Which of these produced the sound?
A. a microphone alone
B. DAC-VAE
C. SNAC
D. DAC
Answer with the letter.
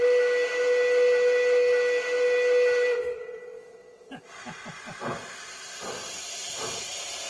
A